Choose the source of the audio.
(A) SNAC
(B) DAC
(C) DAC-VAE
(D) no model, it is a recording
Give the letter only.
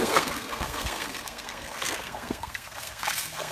A